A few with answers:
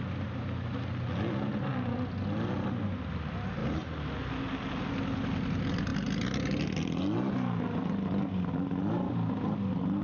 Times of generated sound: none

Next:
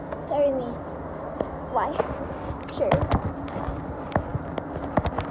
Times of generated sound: none